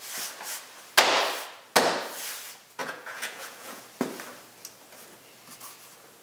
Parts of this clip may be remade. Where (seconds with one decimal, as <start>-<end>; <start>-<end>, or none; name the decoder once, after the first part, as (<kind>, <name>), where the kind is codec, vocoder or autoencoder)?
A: 2.8-3.8 (vocoder, Vocos)